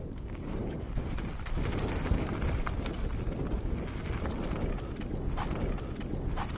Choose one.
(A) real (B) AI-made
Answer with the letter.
A